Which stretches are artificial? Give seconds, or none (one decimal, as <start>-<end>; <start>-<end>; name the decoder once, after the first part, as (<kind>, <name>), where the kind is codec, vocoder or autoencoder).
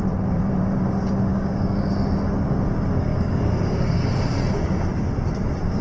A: 1.3-1.8 (codec, DAC); 3.1-4.0